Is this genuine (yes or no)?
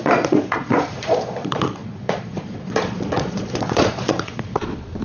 no